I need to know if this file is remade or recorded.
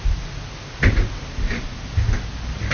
recorded